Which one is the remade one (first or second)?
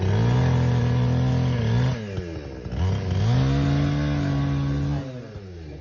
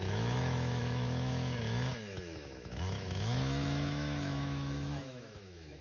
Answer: second